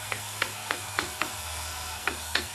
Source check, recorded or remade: remade